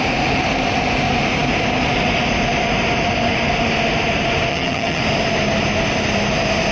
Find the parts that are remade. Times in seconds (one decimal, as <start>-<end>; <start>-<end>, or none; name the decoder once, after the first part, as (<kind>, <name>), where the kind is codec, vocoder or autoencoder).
4.5-5.0 (vocoder, HiFi-GAN)